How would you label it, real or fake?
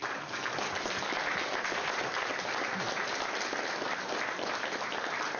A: real